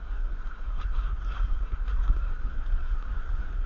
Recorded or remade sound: remade